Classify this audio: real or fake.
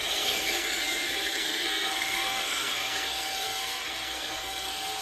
fake